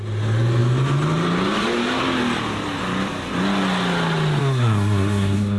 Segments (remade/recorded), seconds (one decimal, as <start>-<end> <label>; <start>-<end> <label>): 0.0-4.4 recorded; 4.4-5.6 remade